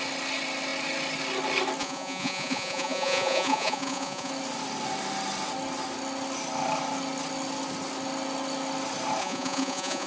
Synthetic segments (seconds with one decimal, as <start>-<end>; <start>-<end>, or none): 1.8-4.3; 9.2-10.1